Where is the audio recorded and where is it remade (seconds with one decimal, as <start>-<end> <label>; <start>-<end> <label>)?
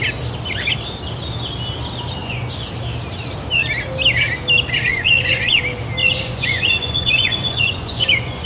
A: 0.0-2.2 recorded; 2.2-2.7 remade; 2.7-4.9 recorded; 4.9-5.6 remade; 5.6-6.0 recorded; 6.0-8.5 remade